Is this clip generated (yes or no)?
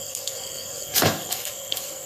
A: yes